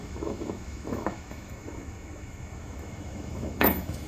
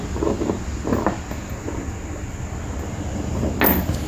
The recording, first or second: second